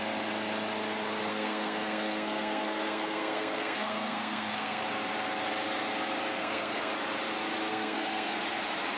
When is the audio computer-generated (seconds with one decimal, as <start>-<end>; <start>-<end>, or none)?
1.3-4.8; 6.4-6.9; 7.7-8.4